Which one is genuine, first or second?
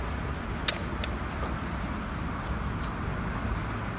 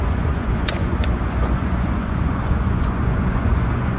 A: first